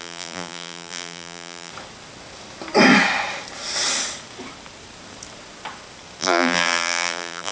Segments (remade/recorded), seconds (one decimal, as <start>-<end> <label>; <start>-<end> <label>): 0.0-1.7 remade; 1.7-6.2 recorded; 6.2-7.5 remade